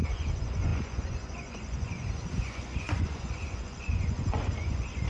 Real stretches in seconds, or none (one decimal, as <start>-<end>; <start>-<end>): none